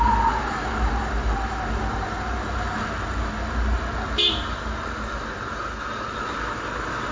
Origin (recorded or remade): recorded